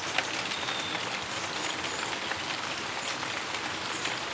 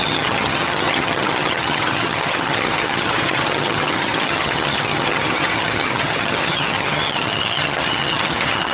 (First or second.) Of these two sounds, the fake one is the second